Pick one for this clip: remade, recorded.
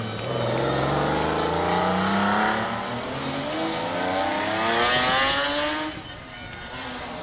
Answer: recorded